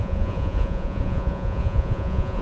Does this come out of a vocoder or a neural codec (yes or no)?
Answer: yes